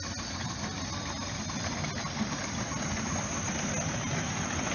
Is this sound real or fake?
real